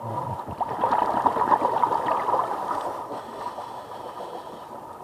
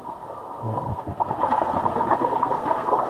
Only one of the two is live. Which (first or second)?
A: first